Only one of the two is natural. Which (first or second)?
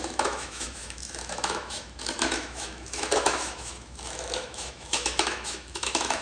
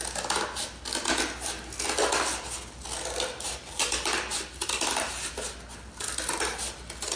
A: second